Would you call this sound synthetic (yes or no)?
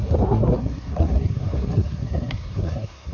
yes